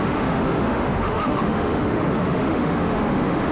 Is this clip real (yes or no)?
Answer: no